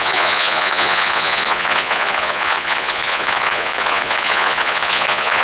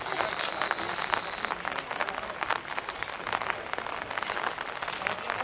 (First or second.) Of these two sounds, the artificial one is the first